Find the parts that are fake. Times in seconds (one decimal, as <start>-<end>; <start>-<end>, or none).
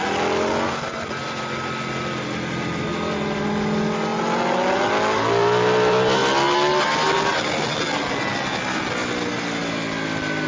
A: none